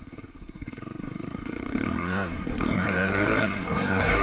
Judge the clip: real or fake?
fake